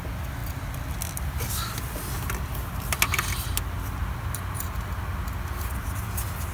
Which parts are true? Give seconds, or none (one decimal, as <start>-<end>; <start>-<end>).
0.0-6.5